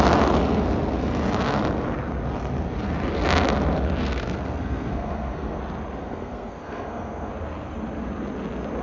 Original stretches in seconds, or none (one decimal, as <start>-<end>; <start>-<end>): 0.0-4.0; 5.6-6.0; 7.3-8.8